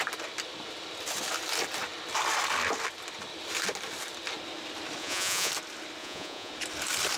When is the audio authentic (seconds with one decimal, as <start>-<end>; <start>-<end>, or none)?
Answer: 0.0-5.0; 5.5-6.0; 6.5-7.2